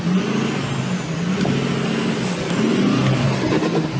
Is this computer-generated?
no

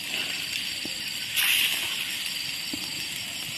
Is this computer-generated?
no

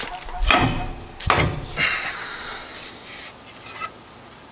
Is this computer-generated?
no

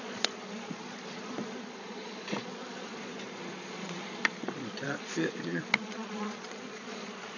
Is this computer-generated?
yes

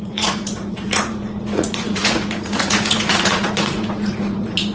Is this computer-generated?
yes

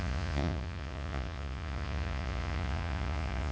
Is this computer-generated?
yes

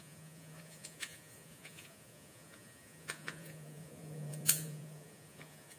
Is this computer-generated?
yes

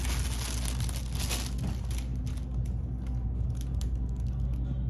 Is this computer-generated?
no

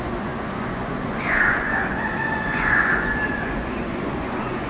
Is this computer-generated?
yes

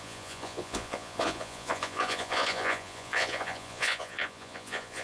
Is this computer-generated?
yes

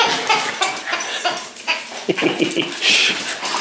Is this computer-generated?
no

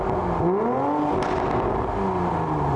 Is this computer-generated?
no